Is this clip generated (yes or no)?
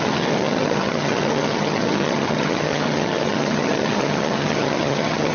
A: yes